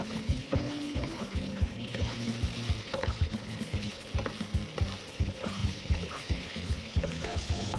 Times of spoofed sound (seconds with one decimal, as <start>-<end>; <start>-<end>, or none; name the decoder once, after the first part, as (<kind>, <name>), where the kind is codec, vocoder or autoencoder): 0.0-2.3 (codec, HILCodec); 2.8-4.1; 5.1-7.8